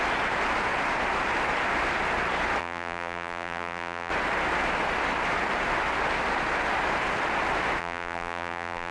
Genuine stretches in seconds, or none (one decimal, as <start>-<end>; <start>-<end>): 0.0-2.6; 4.1-7.8